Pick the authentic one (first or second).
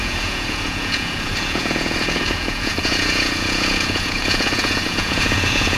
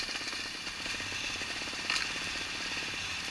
second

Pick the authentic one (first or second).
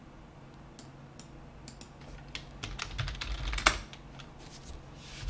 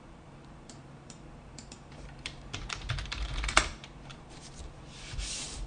first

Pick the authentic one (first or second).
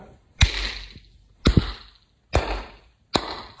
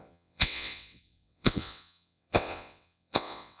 first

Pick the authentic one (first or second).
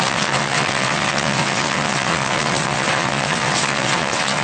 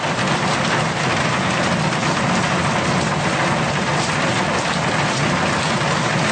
second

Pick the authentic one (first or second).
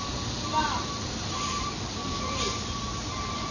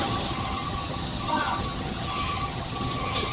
first